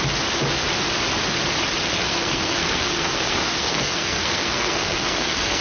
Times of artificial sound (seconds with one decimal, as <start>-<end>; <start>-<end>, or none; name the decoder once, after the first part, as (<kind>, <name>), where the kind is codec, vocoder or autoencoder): 1.8-5.6 (codec, SNAC)